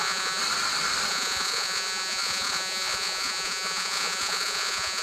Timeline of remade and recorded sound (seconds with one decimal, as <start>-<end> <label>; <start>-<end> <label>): 0.0-0.4 remade; 0.4-1.1 recorded; 1.1-5.0 remade